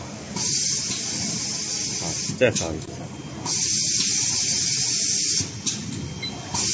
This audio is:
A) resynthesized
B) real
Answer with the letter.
B